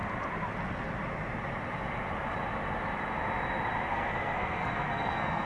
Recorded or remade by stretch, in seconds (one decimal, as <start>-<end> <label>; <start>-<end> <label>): 0.0-3.9 recorded; 3.9-5.5 remade